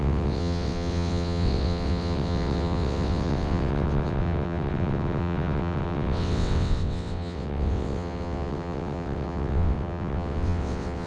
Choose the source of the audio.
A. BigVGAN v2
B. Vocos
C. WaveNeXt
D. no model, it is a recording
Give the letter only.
C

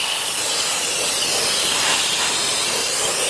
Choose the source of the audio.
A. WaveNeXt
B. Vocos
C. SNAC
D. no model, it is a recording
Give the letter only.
D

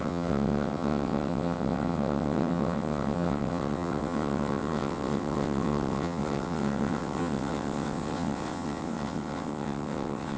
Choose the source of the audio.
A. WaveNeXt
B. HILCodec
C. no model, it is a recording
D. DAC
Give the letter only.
A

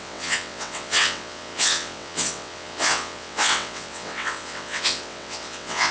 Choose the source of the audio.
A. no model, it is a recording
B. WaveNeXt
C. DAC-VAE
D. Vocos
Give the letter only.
B